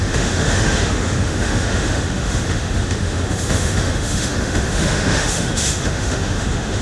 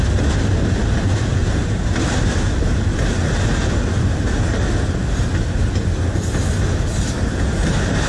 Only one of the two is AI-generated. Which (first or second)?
first